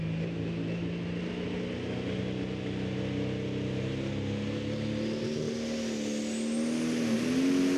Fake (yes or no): no